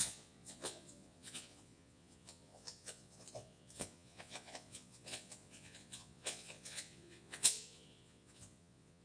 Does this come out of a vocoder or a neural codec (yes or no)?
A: yes